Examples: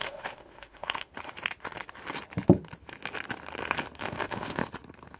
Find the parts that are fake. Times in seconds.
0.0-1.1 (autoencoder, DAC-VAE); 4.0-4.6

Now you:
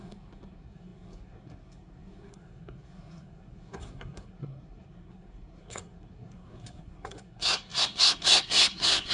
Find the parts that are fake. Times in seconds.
0.0-9.1 (codec, SNAC)

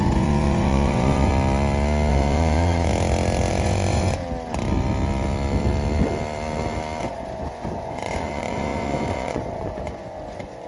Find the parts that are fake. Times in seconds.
0.0-1.3 (vocoder, Vocos); 2.1-2.9; 3.5-4.2; 7.0-10.7

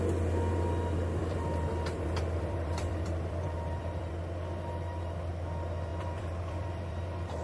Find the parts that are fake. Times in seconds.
1.2-4.1 (vocoder, BigVGAN v2); 5.9-7.4

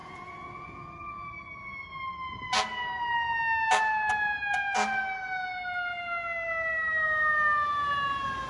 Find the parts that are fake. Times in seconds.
0.0-0.9 (vocoder, Vocos)

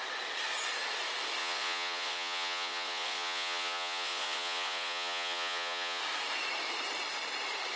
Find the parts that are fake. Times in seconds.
1.4-6.0 (vocoder, Vocos)